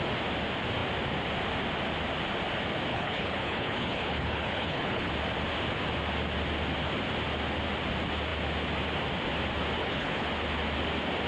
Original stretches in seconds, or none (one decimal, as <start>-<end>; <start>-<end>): 0.0-2.9; 5.1-9.8; 10.3-11.3